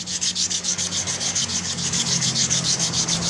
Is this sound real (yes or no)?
no